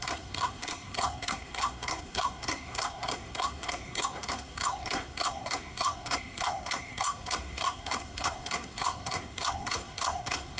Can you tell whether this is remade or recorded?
remade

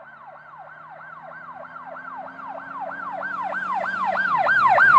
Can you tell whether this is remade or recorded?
recorded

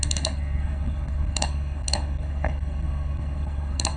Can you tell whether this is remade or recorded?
remade